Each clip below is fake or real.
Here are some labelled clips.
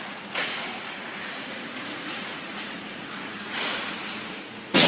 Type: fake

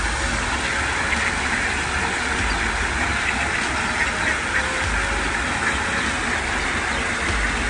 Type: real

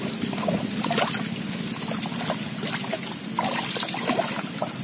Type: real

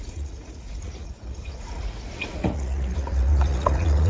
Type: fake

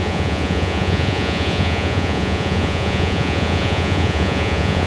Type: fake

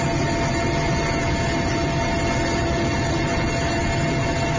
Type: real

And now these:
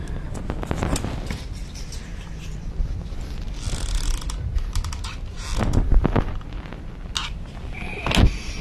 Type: real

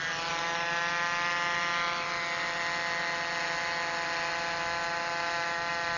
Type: real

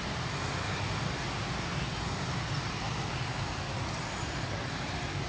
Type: real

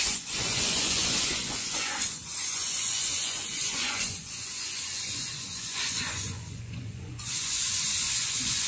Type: fake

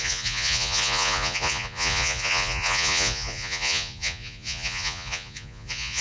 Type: fake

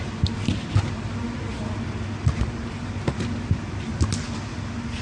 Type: real